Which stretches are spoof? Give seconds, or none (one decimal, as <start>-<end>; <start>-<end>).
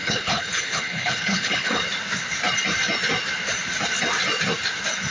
0.0-1.8